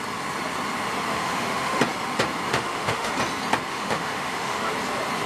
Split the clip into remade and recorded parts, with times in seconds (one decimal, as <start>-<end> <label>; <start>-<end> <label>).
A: 0.0-1.1 recorded; 1.1-1.8 remade; 1.8-2.5 recorded; 2.5-3.1 remade; 3.1-3.7 recorded; 3.7-4.7 remade; 4.7-5.3 recorded